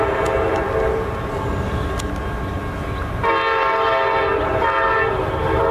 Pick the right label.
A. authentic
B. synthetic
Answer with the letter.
A